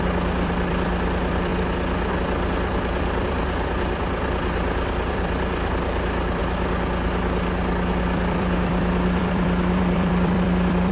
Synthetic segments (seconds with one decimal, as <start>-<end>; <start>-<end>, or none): 0.0-1.5; 2.1-6.4; 8.0-10.9